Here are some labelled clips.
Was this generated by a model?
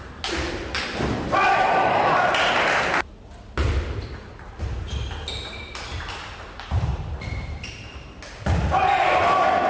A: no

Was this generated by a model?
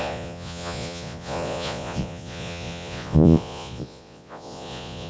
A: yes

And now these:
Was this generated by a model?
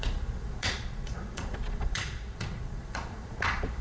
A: yes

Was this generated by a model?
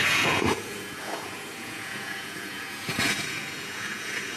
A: yes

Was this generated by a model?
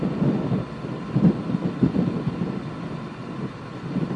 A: no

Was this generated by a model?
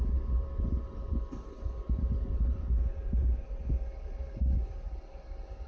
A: no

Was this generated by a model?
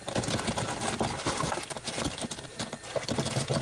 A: no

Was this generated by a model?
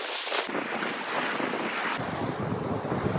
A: no